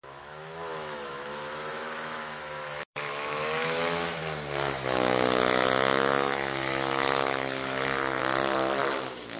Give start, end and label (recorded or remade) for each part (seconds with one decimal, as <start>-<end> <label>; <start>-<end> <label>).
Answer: 0.0-4.2 remade; 4.2-4.7 recorded; 4.7-8.2 remade; 8.2-8.8 recorded; 8.8-9.4 remade